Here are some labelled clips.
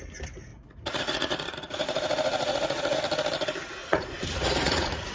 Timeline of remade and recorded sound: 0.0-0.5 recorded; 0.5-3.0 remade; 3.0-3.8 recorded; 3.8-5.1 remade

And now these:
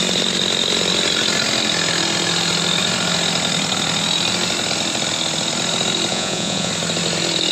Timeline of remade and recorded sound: 0.0-6.1 recorded; 6.1-6.7 remade; 6.7-7.5 recorded

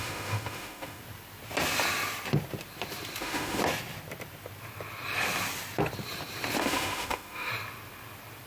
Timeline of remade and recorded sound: 0.0-1.0 remade; 1.0-3.2 recorded; 3.2-3.6 remade; 3.6-6.6 recorded; 6.6-7.5 remade; 7.5-8.5 recorded

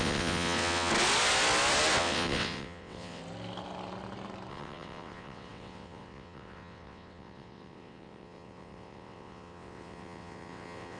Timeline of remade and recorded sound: 0.0-0.9 remade; 0.9-2.0 recorded; 2.0-3.2 remade; 3.2-4.5 recorded; 4.5-11.0 remade

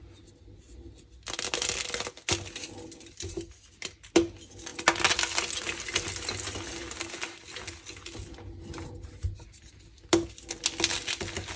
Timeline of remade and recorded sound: 0.0-11.6 recorded

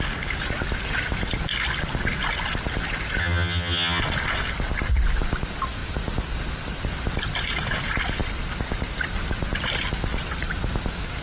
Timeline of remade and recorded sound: 0.0-3.2 recorded; 3.2-4.0 remade; 4.0-11.2 recorded

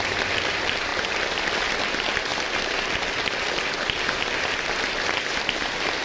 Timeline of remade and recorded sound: 0.0-6.0 recorded